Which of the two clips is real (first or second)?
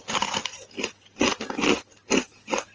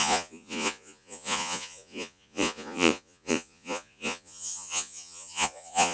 first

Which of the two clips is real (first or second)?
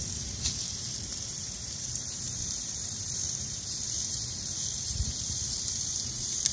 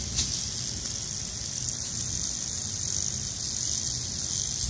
second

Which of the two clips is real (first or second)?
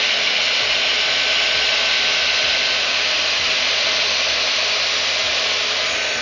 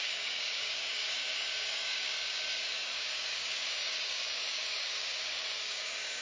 first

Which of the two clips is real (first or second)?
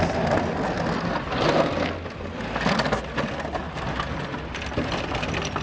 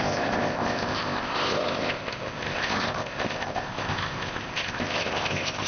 first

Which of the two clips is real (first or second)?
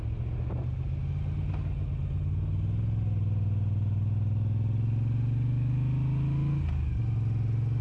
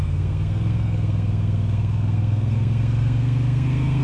first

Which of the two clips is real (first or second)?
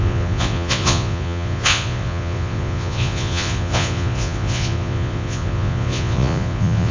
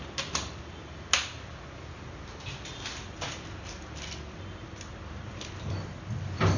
second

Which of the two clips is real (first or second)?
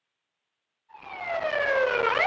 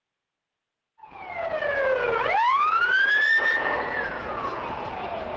first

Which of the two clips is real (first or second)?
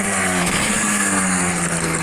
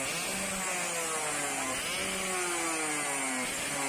second